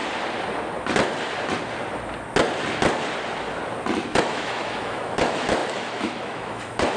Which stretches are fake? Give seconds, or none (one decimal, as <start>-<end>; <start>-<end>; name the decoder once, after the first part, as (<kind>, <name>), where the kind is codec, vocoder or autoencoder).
4.2-7.0 (autoencoder, DAC-VAE)